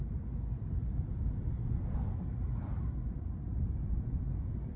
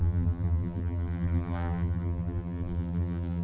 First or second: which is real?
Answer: first